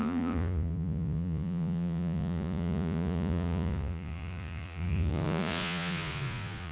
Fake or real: fake